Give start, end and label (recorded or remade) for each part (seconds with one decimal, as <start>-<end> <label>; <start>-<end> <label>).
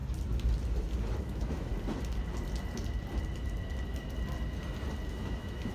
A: 0.0-1.2 recorded; 1.2-1.7 remade; 1.7-5.1 recorded; 5.1-5.7 remade